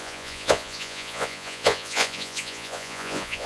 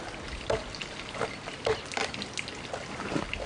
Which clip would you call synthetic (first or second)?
first